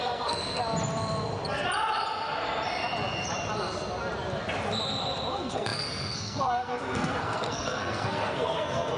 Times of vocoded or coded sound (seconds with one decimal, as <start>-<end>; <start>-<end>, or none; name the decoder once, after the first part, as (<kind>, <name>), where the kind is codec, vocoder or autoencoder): 0.0-0.6 (codec, SNAC); 5.3-9.0